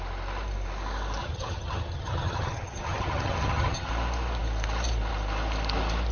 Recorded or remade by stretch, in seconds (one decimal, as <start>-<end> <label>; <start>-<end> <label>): 0.0-1.2 recorded; 1.2-3.9 remade; 3.9-6.1 recorded